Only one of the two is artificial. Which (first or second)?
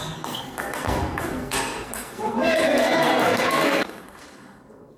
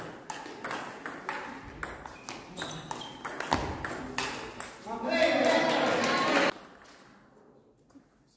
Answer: first